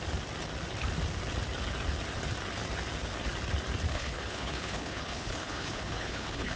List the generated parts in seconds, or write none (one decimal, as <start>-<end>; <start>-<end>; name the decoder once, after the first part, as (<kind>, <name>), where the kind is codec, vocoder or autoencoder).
3.9-6.6 (codec, HILCodec)